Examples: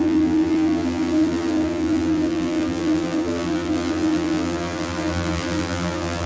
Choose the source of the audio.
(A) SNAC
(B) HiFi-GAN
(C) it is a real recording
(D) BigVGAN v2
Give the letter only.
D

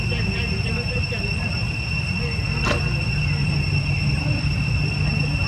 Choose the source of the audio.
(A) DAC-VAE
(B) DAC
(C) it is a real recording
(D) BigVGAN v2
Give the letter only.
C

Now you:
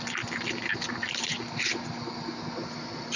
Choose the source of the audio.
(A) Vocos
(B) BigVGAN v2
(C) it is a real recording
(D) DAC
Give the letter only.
C